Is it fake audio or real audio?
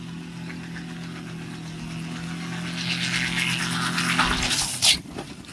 real